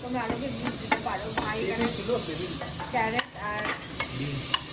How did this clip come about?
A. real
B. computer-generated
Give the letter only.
A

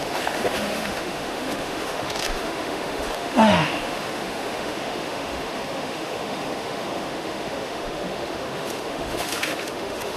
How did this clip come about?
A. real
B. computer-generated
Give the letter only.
B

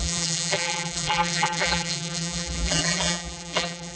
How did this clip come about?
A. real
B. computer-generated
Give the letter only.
B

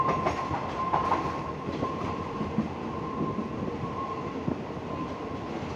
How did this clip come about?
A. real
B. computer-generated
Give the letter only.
A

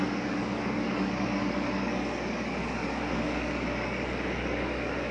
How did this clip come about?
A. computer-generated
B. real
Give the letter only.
A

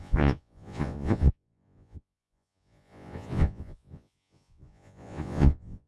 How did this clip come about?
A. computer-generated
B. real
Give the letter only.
A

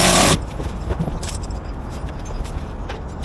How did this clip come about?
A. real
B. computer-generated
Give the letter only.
B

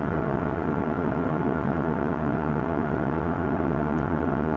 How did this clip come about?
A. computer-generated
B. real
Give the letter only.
A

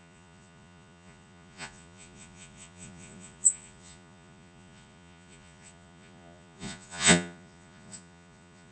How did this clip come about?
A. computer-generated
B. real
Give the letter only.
A